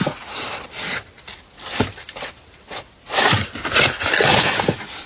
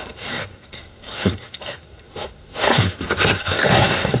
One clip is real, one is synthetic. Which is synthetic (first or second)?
second